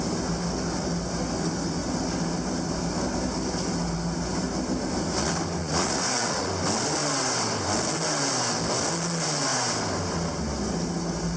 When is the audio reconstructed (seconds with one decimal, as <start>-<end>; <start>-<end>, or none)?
5.6-6.5